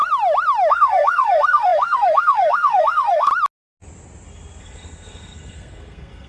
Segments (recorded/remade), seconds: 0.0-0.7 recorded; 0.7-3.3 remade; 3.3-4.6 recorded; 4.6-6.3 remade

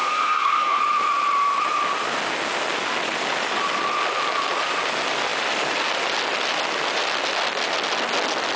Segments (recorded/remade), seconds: 0.0-0.8 remade; 0.8-8.6 recorded